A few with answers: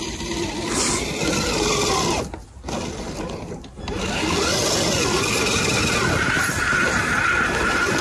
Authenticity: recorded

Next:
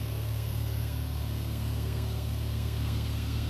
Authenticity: remade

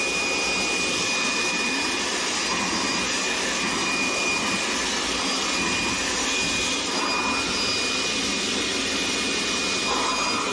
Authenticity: recorded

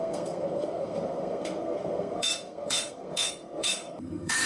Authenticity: remade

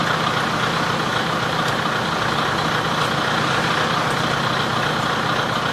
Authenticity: recorded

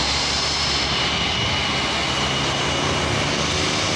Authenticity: recorded